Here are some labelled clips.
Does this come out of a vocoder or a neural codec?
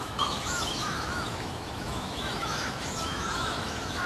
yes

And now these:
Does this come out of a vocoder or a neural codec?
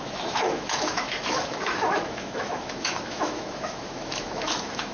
yes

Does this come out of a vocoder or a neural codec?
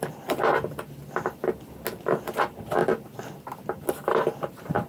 no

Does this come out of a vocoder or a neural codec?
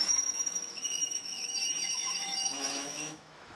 yes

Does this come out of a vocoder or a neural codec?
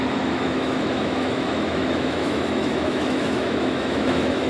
yes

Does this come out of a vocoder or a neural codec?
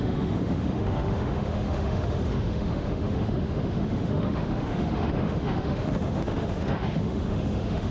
yes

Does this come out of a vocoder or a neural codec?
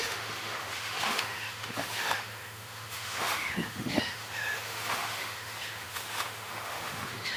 yes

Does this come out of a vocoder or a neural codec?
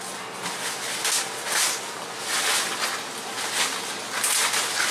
no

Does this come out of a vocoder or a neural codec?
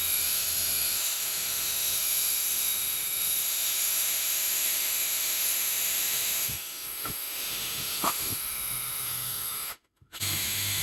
yes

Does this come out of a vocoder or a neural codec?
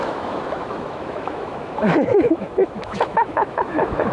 yes